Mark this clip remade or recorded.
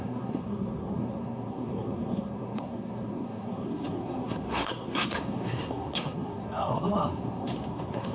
remade